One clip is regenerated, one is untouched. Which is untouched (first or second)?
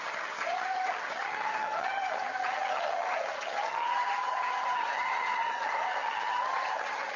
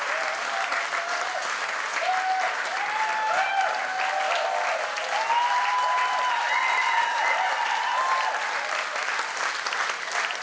second